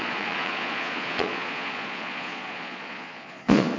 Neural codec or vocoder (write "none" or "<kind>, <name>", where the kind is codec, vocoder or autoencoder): vocoder, Vocos